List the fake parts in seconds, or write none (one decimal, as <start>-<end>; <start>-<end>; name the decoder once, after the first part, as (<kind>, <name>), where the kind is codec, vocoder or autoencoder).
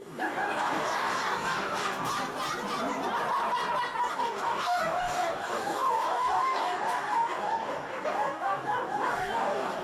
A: 0.0-2.1 (codec, DAC); 4.1-9.8